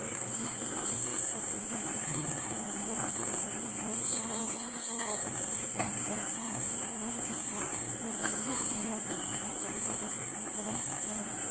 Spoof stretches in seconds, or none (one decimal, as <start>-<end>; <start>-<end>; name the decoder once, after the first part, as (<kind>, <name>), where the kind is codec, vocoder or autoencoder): 0.0-11.5 (codec, SNAC)